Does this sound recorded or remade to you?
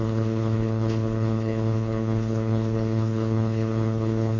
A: remade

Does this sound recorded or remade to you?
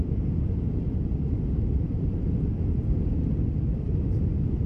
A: recorded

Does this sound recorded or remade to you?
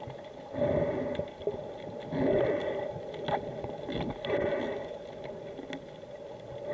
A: recorded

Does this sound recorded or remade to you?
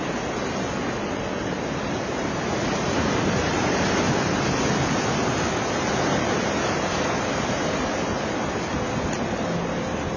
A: recorded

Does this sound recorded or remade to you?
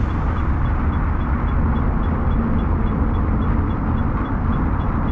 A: recorded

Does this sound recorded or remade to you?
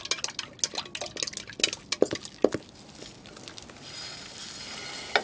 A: recorded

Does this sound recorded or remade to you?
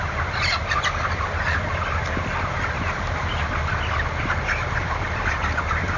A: recorded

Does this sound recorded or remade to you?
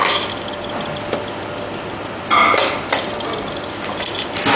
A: recorded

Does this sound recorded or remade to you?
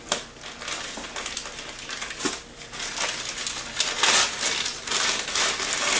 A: recorded